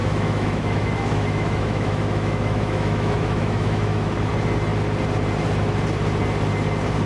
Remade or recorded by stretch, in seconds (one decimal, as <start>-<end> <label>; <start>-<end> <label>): 0.0-4.3 remade; 4.3-7.1 recorded